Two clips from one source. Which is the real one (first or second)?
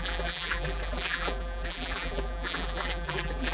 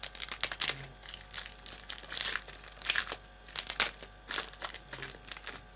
second